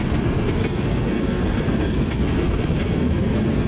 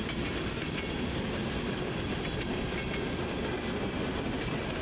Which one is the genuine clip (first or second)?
second